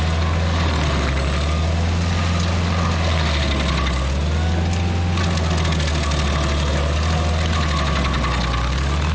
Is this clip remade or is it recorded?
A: recorded